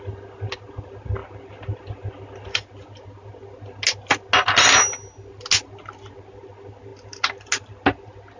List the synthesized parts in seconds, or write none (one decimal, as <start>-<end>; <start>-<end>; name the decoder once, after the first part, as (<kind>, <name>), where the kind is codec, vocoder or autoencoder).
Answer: none

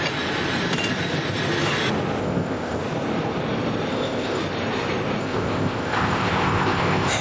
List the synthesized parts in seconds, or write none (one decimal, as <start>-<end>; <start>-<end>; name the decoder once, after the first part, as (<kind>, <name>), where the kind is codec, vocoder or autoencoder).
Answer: 2.2-2.8 (codec, ZipCodec); 3.9-4.4; 5.2-7.2

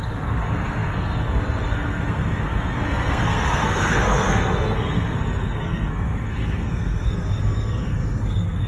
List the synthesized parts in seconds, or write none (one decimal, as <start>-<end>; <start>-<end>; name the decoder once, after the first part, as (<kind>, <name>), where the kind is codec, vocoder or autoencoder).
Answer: 0.0-8.7 (codec, SNAC)

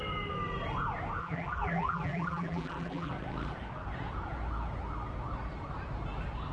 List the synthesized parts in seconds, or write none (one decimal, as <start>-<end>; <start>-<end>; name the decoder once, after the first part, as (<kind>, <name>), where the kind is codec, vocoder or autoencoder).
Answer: 1.2-3.1 (vocoder, BigVGAN v2)